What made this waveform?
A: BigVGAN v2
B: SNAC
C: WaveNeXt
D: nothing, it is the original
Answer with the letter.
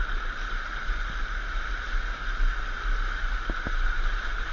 D